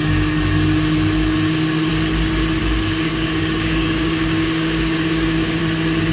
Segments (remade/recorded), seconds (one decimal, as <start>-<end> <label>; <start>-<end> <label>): 0.0-3.1 recorded; 3.1-5.6 remade; 5.6-6.1 recorded